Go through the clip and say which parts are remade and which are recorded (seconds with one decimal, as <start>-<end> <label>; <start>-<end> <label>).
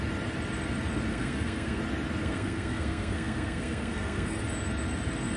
0.0-1.1 recorded; 1.1-1.8 remade; 1.8-2.2 recorded; 2.2-4.4 remade; 4.4-5.4 recorded